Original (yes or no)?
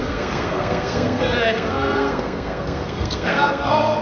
no